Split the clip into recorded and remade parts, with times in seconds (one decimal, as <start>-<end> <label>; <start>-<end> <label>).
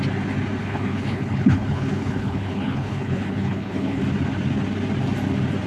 0.0-0.6 recorded; 0.6-4.0 remade; 4.0-5.7 recorded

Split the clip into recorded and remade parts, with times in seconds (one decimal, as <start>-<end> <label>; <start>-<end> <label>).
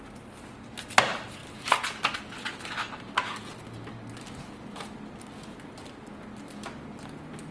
0.0-7.5 recorded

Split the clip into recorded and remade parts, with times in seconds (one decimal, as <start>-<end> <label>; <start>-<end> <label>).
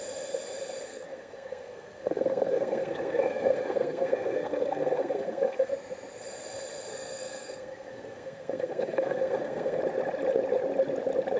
0.0-0.9 recorded; 0.9-5.7 remade; 5.7-6.9 recorded; 6.9-9.8 remade; 9.8-11.4 recorded